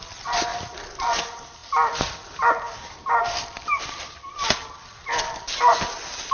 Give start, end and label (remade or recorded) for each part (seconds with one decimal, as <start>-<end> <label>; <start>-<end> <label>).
0.0-6.3 recorded